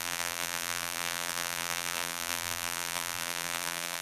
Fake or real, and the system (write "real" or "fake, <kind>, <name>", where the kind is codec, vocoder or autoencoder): fake, vocoder, BigVGAN v2